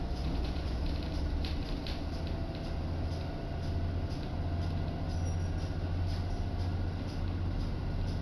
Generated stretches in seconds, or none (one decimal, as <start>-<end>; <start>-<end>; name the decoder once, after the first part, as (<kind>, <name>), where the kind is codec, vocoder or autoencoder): 0.0-0.8 (vocoder, Vocos)